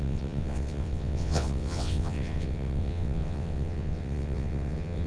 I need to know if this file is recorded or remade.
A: remade